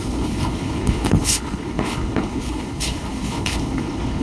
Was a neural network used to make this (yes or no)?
yes